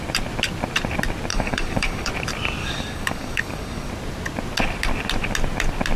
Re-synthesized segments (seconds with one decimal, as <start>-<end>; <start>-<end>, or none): 1.3-2.1; 2.6-3.9